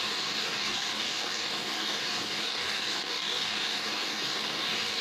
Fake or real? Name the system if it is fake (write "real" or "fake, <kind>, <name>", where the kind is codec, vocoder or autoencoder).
fake, codec, DAC